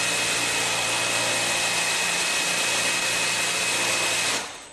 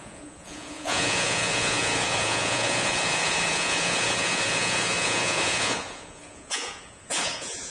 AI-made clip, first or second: second